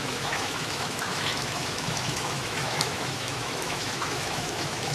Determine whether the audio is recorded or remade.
remade